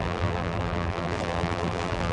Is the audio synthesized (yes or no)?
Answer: yes